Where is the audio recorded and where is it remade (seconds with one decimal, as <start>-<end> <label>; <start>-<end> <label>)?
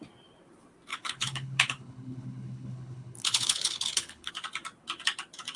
0.0-0.9 recorded; 0.9-4.3 remade; 4.3-5.6 recorded